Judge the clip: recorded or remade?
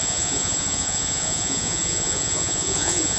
remade